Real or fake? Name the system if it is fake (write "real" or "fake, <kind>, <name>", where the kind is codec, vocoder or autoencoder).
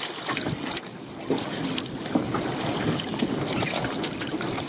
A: real